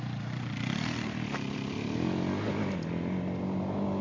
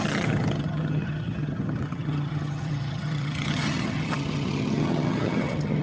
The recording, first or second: first